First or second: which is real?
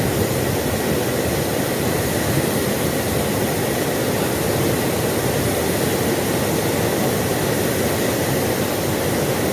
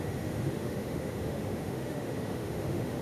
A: first